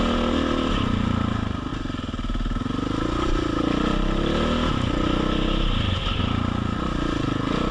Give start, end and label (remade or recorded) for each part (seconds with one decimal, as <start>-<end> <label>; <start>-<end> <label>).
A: 0.0-7.7 recorded